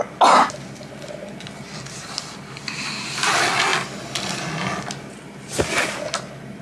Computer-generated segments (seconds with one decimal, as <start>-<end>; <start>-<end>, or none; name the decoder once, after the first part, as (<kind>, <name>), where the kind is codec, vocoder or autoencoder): none